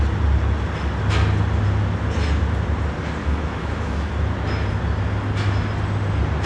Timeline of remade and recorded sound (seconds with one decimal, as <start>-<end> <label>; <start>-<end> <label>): 0.0-3.2 recorded; 3.2-4.1 remade; 4.1-6.5 recorded